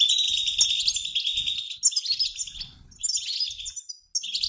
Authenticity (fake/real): real